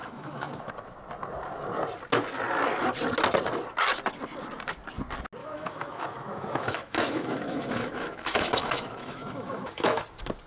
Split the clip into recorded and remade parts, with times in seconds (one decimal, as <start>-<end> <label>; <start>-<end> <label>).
0.0-0.7 remade; 0.7-5.4 recorded; 5.4-10.0 remade; 10.0-10.5 recorded

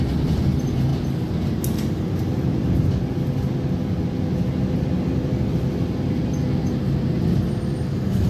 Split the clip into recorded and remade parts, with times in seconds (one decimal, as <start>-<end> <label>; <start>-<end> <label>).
0.0-8.3 recorded

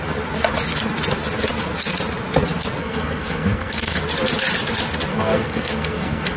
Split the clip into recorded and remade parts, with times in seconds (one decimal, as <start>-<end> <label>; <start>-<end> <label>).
0.0-2.8 recorded; 2.8-4.0 remade; 4.0-5.1 recorded; 5.1-6.4 remade

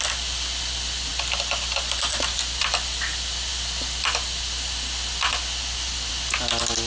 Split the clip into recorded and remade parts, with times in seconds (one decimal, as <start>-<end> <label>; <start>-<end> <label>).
0.0-6.9 recorded

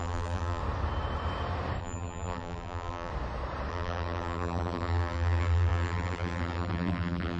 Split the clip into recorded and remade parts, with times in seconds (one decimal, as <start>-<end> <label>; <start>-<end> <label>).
0.0-0.6 remade; 0.6-1.8 recorded; 1.8-3.1 remade; 3.1-3.7 recorded; 3.7-7.4 remade

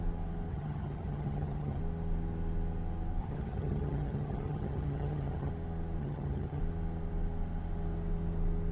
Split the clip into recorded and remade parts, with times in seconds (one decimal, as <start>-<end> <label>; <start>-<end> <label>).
0.0-0.5 recorded; 0.5-1.8 remade; 1.8-3.2 recorded; 3.2-5.5 remade; 5.5-6.0 recorded; 6.0-6.6 remade; 6.6-8.7 recorded